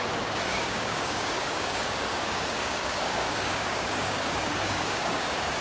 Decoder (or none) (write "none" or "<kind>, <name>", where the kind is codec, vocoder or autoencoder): codec, DAC